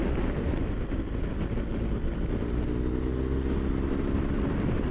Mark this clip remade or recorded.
recorded